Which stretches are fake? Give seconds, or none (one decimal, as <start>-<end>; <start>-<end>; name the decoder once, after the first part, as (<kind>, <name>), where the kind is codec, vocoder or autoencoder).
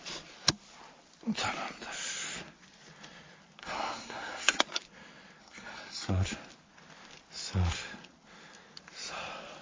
3.6-4.6 (codec, SNAC); 5.4-6.1